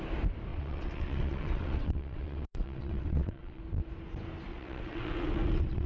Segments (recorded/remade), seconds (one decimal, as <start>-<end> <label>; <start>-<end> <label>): 0.0-0.5 recorded; 0.5-3.6 remade; 3.6-4.5 recorded; 4.5-5.9 remade